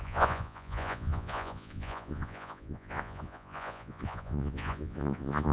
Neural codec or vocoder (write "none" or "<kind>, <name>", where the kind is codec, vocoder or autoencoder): vocoder, Vocos